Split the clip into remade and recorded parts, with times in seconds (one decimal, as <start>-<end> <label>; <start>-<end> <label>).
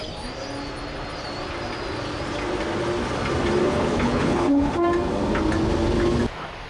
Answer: 0.0-3.6 recorded; 3.6-4.7 remade; 4.7-6.7 recorded